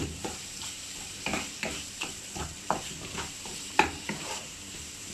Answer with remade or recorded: remade